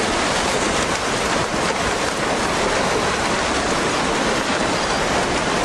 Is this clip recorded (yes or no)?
yes